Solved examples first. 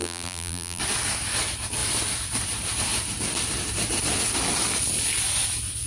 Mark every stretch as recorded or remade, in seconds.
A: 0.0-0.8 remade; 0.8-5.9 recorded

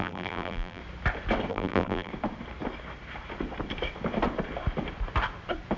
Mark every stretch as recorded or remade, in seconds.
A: 0.0-0.8 remade; 0.8-1.5 recorded; 1.5-2.1 remade; 2.1-5.8 recorded

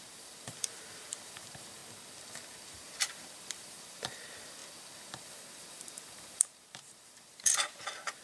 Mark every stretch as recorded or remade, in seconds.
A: 0.0-1.8 remade; 1.8-2.7 recorded; 2.7-4.6 remade; 4.6-5.5 recorded; 5.5-8.2 remade

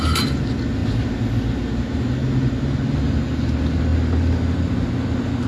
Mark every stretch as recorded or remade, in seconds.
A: 0.0-5.5 recorded

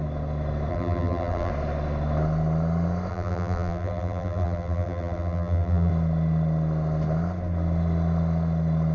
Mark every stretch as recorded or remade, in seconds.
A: 0.0-0.7 recorded; 0.7-1.5 remade; 1.5-3.1 recorded; 3.1-5.9 remade; 5.9-8.9 recorded

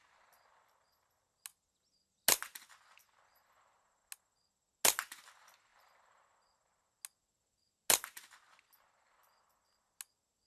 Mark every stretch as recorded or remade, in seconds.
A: 0.0-10.5 recorded

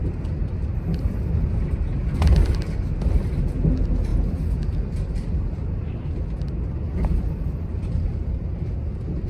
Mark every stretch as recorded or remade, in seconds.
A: 0.0-0.6 recorded; 0.6-1.3 remade; 1.3-9.3 recorded

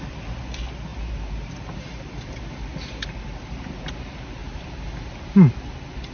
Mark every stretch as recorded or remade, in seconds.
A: 0.0-0.9 recorded; 0.9-2.4 remade; 2.4-4.4 recorded; 4.4-5.5 remade; 5.5-6.1 recorded